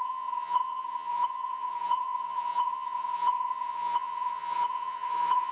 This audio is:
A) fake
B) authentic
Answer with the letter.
A